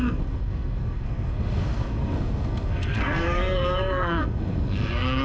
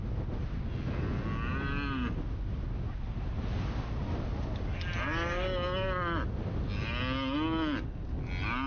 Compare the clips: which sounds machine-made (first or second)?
first